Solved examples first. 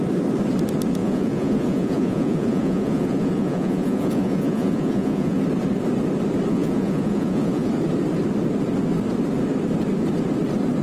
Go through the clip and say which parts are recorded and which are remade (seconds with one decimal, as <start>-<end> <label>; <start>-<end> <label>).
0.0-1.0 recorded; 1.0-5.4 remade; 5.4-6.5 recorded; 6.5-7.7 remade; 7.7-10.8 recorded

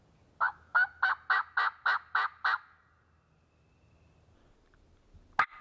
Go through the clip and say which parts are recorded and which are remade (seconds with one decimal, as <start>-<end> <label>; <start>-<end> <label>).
0.0-5.6 recorded

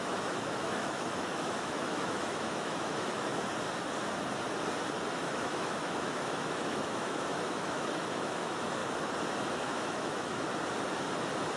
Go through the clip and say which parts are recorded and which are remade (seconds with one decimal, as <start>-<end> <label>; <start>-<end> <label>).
0.0-3.3 remade; 3.3-5.1 recorded; 5.1-8.8 remade; 8.8-9.7 recorded; 9.7-10.5 remade; 10.5-11.6 recorded

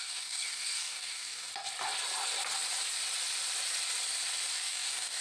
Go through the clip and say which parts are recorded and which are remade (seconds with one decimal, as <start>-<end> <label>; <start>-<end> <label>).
0.0-1.5 remade; 1.5-4.5 recorded; 4.5-5.2 remade